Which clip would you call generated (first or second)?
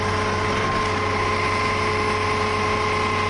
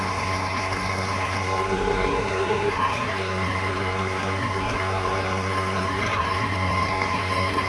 second